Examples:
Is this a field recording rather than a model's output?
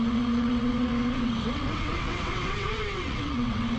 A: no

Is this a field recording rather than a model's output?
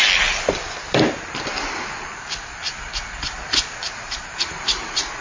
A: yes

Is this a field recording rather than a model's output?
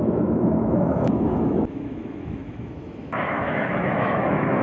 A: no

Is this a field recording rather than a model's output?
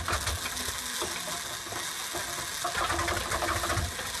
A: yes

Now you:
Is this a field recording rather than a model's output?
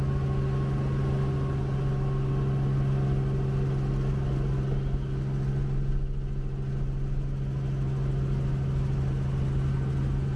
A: yes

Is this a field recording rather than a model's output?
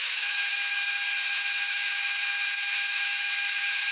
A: no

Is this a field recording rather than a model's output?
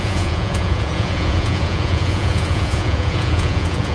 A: no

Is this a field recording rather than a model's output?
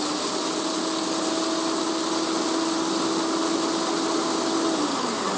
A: yes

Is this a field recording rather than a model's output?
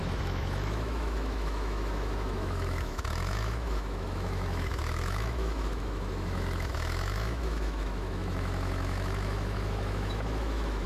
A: no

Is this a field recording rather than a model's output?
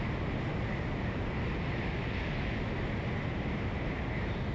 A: yes